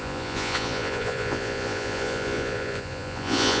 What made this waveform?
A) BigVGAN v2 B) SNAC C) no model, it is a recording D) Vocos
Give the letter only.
D